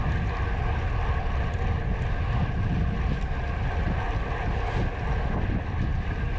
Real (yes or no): yes